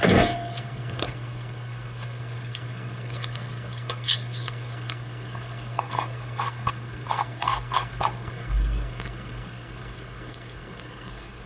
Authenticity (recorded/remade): remade